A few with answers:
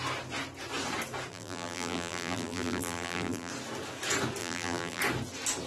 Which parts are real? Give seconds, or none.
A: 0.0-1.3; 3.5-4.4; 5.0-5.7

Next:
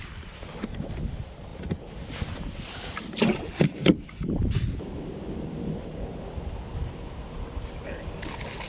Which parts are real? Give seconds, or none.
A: 0.0-6.8; 7.7-8.7

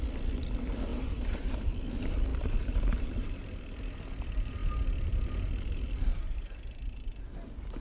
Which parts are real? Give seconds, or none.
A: 0.0-0.9; 1.7-2.3; 3.4-6.1; 7.2-7.8

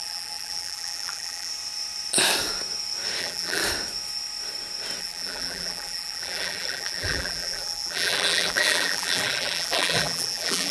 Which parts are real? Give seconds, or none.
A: 1.5-3.2; 3.6-5.0